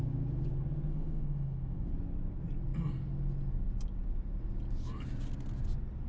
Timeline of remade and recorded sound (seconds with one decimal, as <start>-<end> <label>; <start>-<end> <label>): 0.0-0.9 recorded; 0.9-1.9 remade; 1.9-6.1 recorded